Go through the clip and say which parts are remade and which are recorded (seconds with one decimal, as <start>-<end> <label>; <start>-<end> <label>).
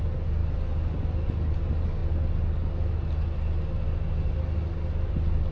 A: 0.0-5.5 recorded